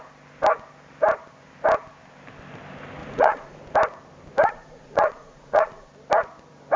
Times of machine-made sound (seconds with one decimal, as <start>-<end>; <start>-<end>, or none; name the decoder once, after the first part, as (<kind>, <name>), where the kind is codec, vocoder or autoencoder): 3.0-3.6 (vocoder, Vocos); 4.4-5.9